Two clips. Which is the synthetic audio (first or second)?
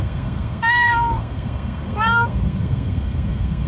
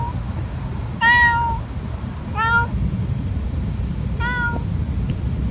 first